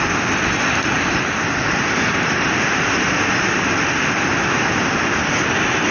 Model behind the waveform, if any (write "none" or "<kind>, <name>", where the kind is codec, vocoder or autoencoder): none